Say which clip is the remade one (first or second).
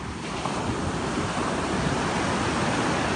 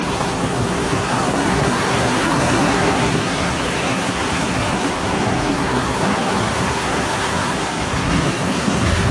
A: second